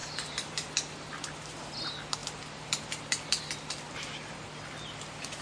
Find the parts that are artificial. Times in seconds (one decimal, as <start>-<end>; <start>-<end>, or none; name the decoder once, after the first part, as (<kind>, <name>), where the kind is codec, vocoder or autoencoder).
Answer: none